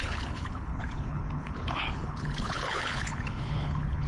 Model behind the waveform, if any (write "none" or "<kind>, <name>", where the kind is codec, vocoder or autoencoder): codec, HILCodec